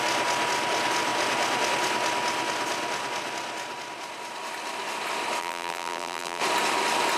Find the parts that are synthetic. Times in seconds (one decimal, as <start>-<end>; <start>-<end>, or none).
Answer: 5.4-6.4